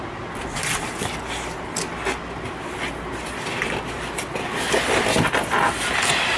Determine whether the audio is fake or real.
real